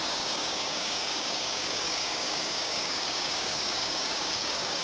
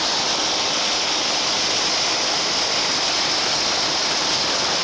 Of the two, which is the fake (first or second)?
first